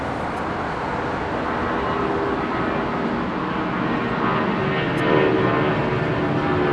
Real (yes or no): yes